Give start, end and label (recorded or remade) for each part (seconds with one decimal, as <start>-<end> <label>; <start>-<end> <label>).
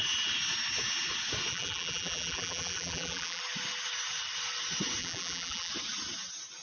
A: 0.0-1.5 recorded; 1.5-3.4 remade; 3.4-5.0 recorded; 5.0-5.7 remade; 5.7-6.6 recorded